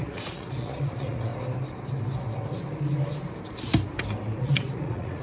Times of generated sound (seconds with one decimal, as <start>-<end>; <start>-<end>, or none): 0.0-1.3; 4.4-5.2